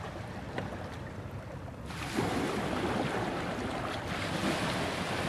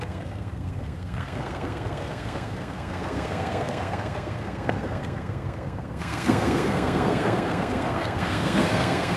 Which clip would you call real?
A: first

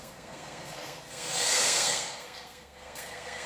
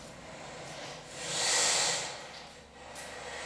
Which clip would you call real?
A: second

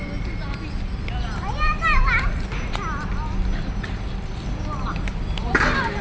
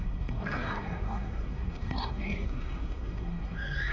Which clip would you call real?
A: first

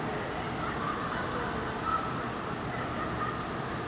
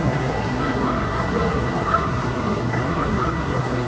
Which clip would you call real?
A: first